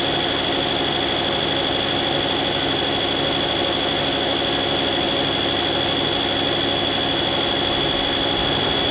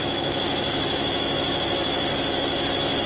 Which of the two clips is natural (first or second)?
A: first